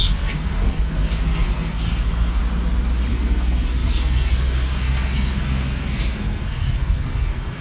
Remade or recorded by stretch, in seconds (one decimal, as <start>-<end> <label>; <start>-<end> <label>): 0.0-2.4 remade; 2.4-3.1 recorded; 3.1-7.6 remade